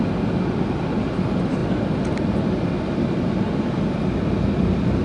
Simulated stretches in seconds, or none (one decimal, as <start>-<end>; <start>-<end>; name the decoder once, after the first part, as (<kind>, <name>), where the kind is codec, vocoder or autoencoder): none